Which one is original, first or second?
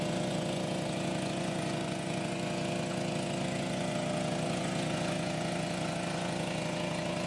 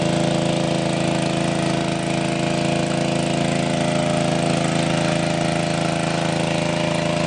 second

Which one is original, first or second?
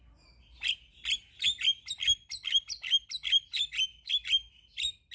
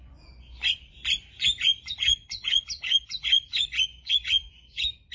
first